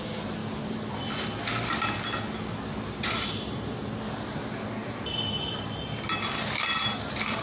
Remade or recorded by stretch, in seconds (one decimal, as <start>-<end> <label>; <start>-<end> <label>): 0.0-0.4 recorded; 0.4-1.8 remade; 1.8-4.8 recorded; 4.8-5.8 remade; 5.8-7.4 recorded